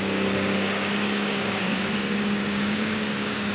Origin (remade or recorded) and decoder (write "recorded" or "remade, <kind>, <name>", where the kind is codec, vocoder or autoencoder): remade, codec, DAC